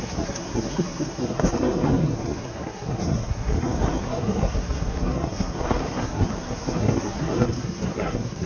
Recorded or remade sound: remade